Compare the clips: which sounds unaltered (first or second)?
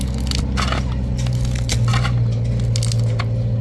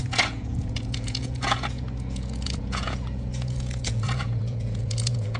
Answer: first